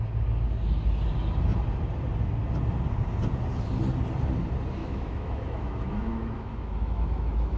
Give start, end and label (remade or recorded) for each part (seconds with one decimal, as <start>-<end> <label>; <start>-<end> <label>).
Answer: 0.0-4.8 recorded; 4.8-7.6 remade